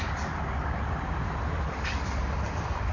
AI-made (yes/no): no